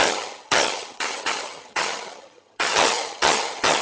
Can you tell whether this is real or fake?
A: fake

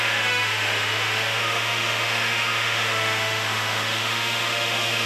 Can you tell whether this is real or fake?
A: fake